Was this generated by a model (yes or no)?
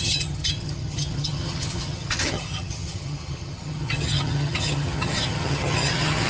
yes